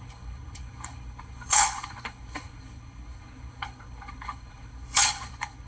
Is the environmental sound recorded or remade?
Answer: remade